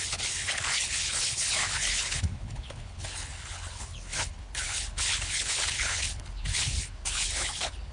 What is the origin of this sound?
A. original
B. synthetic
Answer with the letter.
B